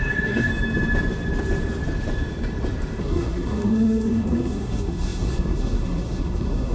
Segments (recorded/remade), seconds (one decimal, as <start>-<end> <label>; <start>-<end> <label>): 0.0-0.5 remade; 0.5-3.0 recorded; 3.0-6.7 remade